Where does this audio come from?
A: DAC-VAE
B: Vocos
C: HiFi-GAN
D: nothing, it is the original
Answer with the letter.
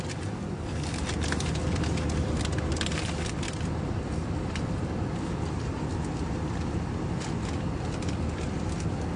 D